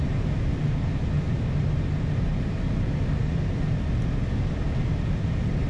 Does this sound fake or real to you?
real